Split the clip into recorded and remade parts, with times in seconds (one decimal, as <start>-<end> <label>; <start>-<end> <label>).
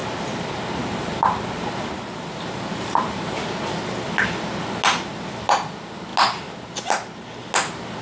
0.0-8.0 recorded